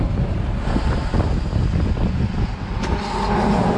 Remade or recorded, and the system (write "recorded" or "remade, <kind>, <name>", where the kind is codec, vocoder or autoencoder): remade, vocoder, BigVGAN v2